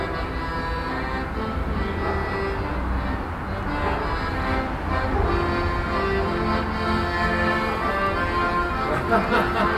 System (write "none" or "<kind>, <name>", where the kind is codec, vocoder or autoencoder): none